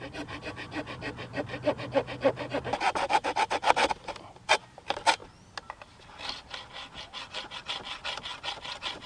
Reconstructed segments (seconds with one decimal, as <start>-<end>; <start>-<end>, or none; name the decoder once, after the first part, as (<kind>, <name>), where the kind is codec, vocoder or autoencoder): 8.3-9.1 (vocoder, BigVGAN v2)